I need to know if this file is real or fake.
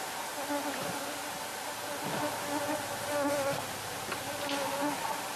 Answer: real